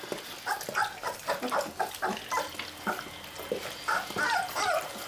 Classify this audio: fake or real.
real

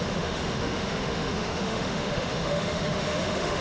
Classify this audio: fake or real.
fake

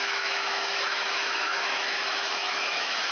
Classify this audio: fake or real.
fake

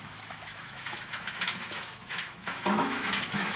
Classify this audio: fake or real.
fake